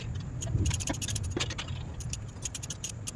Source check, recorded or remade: remade